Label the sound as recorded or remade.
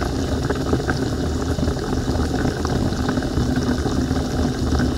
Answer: recorded